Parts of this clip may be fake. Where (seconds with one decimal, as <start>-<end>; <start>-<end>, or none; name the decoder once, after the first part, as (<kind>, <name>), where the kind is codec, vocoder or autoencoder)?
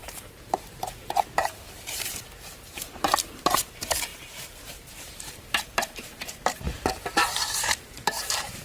0.0-8.6 (vocoder, BigVGAN v2)